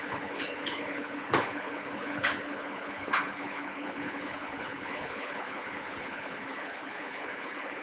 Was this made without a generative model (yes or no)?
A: no